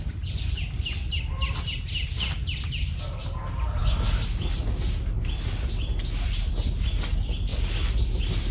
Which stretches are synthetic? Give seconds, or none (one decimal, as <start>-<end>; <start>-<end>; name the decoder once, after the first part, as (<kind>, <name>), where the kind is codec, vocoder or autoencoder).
none